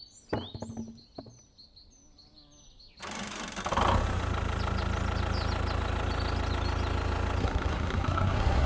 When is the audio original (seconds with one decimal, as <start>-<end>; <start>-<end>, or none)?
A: 0.0-7.4